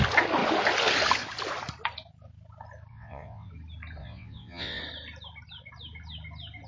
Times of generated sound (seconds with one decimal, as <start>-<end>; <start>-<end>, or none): 2.9-3.5; 4.0-4.8